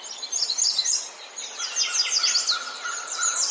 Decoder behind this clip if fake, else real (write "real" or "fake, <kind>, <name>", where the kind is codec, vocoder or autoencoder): real